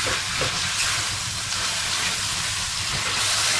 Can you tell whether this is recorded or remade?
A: recorded